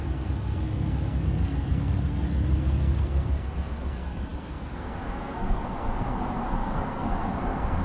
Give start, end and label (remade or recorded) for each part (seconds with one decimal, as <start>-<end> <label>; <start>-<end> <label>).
0.0-7.8 remade